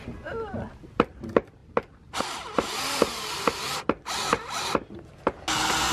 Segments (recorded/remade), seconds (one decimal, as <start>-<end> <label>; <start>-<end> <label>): 0.0-0.7 remade; 0.7-5.9 recorded